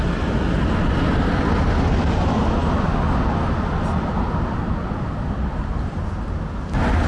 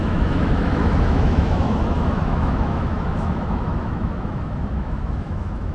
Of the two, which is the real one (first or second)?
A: first